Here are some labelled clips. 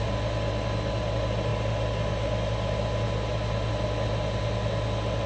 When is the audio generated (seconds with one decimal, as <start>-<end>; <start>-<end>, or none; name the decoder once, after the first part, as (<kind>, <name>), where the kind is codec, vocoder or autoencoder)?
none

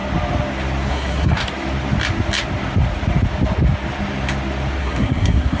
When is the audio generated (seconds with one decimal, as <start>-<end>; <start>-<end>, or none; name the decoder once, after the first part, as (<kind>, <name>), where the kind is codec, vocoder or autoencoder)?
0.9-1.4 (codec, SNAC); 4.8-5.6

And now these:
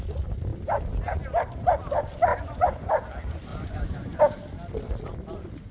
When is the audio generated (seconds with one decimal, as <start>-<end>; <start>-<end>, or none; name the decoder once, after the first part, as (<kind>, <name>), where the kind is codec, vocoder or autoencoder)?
2.3-2.9 (vocoder, Vocos); 3.5-4.2

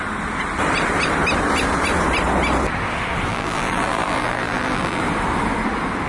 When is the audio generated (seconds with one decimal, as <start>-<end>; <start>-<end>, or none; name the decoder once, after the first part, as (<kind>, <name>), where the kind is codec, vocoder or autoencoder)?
3.3-5.0 (vocoder, BigVGAN v2)